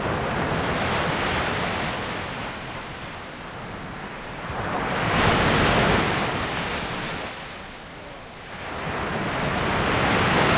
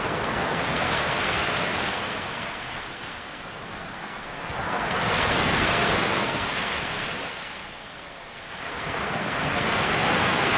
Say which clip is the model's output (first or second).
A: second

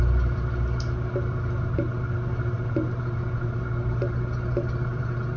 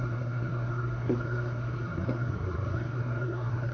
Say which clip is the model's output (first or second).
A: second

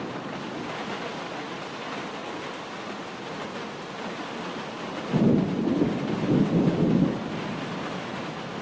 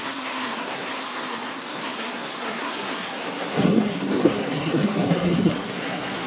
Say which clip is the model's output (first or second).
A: second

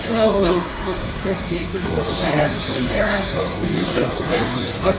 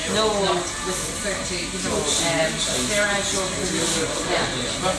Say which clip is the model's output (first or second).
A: first